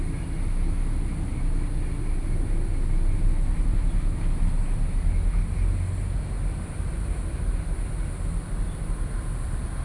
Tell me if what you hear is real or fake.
real